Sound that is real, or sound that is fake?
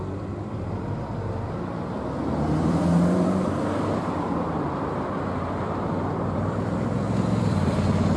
fake